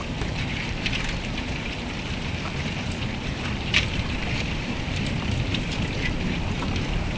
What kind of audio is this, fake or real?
fake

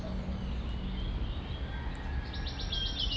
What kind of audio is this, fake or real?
real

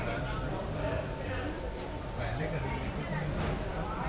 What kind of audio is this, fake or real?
real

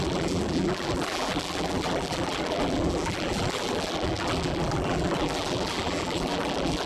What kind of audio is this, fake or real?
fake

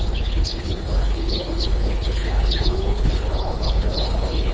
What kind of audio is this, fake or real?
fake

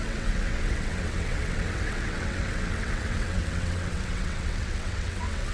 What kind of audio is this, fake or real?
fake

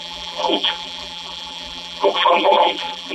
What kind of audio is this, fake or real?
fake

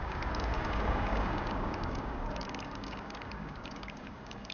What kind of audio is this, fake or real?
fake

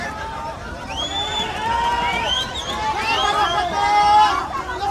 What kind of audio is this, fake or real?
fake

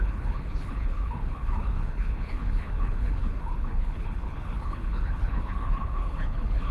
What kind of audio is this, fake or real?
fake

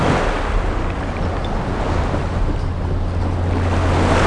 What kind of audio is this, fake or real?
real